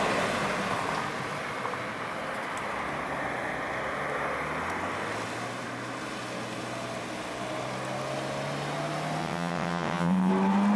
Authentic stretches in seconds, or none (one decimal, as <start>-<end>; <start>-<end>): 0.0-9.2; 10.3-10.8